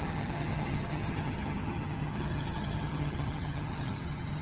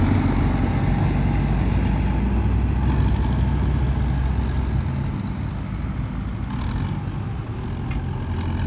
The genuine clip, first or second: second